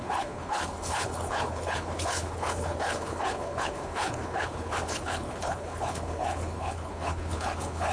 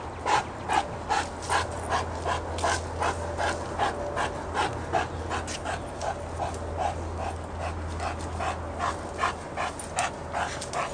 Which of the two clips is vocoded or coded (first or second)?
first